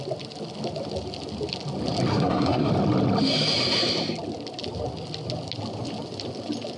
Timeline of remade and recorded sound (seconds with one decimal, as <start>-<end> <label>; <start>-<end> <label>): 0.0-2.1 recorded; 2.1-2.7 remade; 2.7-6.8 recorded